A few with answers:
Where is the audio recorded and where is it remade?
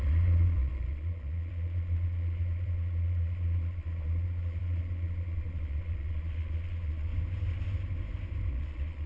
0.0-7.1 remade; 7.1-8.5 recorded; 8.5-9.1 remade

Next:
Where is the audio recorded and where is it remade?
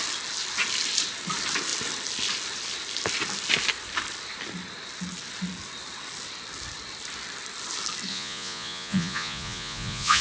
0.0-8.1 recorded; 8.1-10.2 remade